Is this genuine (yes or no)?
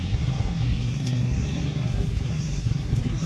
no